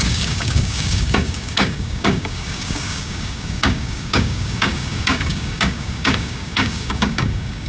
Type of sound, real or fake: fake